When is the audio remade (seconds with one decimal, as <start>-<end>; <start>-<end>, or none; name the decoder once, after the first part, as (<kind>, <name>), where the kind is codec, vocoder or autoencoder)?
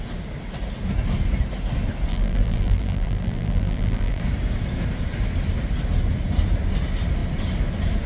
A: 2.1-4.2 (vocoder, BigVGAN v2)